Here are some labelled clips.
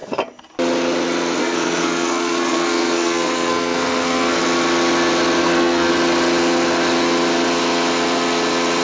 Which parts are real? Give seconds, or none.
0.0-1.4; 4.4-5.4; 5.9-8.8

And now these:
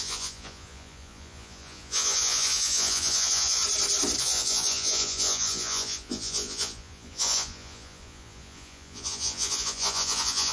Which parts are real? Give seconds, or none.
3.6-4.2

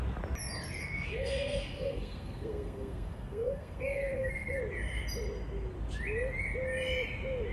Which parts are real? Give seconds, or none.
0.0-0.8; 4.6-7.5

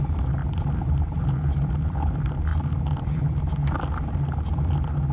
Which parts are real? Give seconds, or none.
0.0-0.4; 1.2-5.1

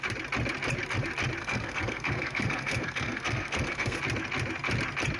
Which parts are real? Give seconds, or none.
0.0-1.4; 4.0-5.2

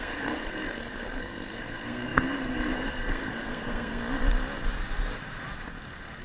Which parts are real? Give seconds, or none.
4.0-6.2